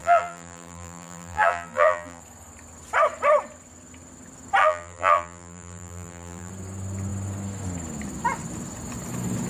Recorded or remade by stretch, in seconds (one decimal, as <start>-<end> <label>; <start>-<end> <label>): 0.0-2.2 remade; 2.2-4.6 recorded; 4.6-6.5 remade; 6.5-9.5 recorded

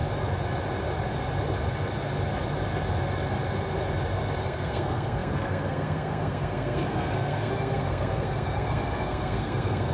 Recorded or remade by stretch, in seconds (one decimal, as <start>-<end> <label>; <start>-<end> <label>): 0.0-4.4 recorded; 4.4-9.9 remade

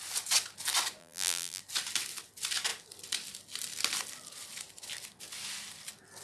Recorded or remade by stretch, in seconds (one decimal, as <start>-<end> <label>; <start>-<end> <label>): 0.0-1.0 recorded; 1.0-1.6 remade; 1.6-6.2 recorded

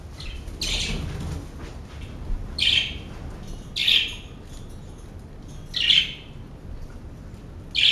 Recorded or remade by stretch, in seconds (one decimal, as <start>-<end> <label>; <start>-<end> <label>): 0.0-7.9 recorded

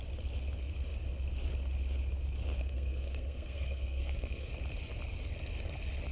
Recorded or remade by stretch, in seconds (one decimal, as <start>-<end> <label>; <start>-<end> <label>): 0.0-2.6 recorded; 2.6-4.5 remade; 4.5-6.1 recorded

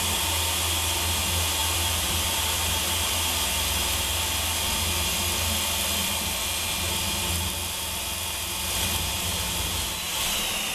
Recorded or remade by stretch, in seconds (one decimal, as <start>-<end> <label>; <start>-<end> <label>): 0.0-1.6 recorded; 1.6-2.7 remade; 2.7-10.7 recorded

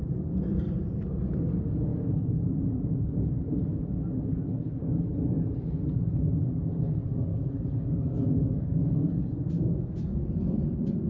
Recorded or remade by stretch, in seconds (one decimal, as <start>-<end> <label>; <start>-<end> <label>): 0.0-1.9 recorded; 1.9-2.4 remade; 2.4-3.7 recorded; 3.7-5.1 remade; 5.1-7.3 recorded; 7.3-10.4 remade; 10.4-11.1 recorded